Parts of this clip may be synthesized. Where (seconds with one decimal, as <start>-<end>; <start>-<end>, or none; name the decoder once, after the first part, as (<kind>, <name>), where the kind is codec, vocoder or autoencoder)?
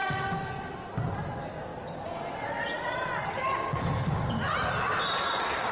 0.6-5.7 (vocoder, BigVGAN v2)